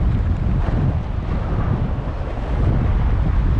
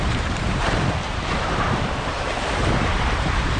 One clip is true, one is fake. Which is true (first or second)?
first